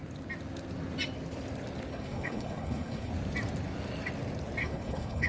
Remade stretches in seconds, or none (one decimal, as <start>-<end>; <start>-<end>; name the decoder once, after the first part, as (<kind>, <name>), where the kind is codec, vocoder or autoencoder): 1.9-3.1 (codec, HILCodec); 4.6-5.3